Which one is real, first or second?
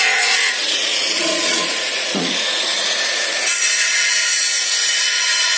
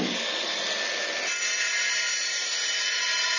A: second